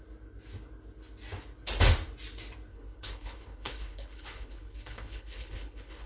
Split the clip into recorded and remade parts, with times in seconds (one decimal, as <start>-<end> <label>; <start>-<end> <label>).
0.0-2.7 recorded; 2.7-6.1 remade